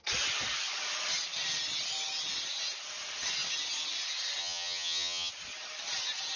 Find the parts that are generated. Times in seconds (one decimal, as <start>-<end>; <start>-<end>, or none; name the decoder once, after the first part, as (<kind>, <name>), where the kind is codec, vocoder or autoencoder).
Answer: 4.4-5.3 (vocoder, HiFi-GAN)